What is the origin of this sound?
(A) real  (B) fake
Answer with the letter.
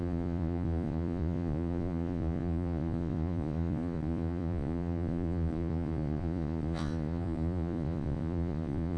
B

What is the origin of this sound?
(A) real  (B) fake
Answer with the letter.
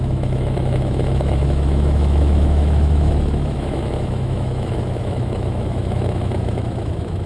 B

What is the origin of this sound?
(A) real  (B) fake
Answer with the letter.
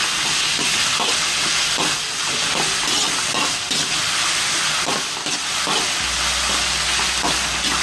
A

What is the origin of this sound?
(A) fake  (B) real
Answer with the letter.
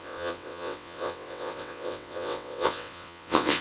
A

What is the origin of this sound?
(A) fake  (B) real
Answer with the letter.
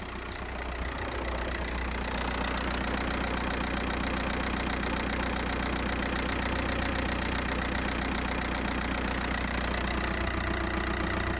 B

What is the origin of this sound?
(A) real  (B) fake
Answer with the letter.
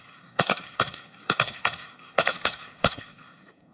B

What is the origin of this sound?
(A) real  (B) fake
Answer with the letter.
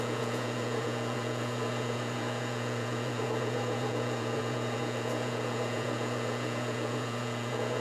B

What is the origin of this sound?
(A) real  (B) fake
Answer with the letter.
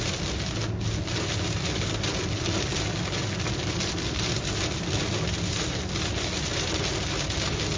A